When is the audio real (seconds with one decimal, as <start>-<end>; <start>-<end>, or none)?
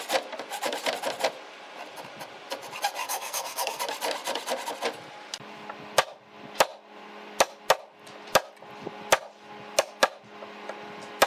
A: 0.0-3.0; 3.8-11.3